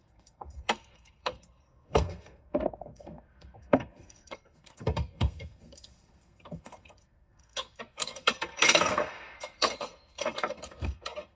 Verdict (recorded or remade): remade